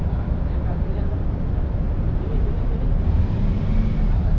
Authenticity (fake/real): real